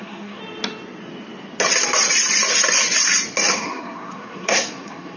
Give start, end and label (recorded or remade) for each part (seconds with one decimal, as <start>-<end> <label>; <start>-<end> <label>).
0.0-0.4 remade; 0.4-3.5 recorded; 3.5-5.2 remade